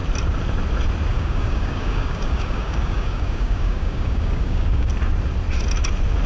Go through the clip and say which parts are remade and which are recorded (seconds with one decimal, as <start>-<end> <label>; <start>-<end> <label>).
0.0-1.1 recorded; 1.1-4.9 remade; 4.9-6.3 recorded